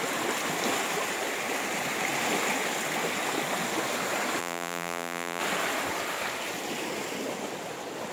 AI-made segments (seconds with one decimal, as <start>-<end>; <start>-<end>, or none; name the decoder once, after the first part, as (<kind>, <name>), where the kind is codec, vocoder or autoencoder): 4.4-5.4 (vocoder, BigVGAN v2)